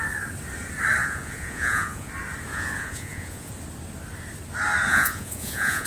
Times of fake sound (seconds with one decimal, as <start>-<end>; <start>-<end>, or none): 1.0-2.1; 2.5-3.5; 4.9-5.9